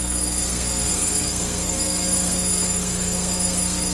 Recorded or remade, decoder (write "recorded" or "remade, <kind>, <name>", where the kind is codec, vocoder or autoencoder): remade, codec, SNAC